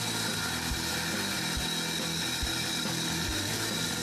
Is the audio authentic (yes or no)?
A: yes